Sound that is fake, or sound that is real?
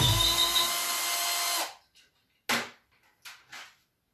real